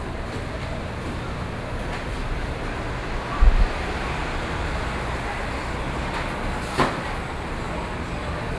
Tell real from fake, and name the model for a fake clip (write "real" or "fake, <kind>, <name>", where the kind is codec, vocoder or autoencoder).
real